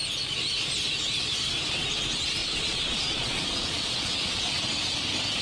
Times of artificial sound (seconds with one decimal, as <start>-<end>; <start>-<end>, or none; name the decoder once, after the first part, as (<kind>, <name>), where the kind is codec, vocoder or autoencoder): 2.4-4.6 (vocoder, Vocos)